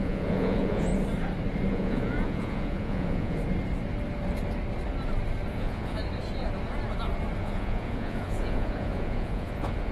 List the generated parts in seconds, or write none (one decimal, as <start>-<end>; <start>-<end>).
0.0-0.9; 1.7-3.4; 5.5-6.0; 7.4-9.9

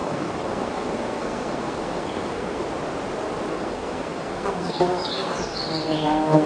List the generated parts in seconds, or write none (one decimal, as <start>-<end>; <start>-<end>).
0.0-2.6; 3.5-6.5

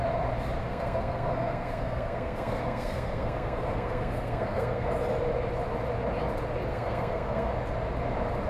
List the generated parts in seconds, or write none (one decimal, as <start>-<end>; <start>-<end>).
0.6-4.9; 6.7-7.5